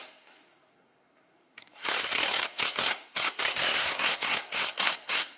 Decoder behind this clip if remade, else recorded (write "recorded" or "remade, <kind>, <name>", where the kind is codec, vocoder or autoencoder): remade, codec, SNAC